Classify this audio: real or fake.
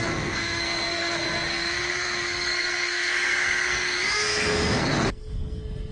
fake